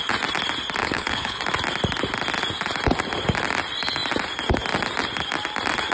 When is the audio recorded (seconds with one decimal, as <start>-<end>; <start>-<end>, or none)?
0.0-0.8; 1.4-5.9